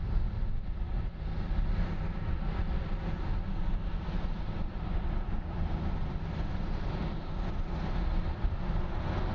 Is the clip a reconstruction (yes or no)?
no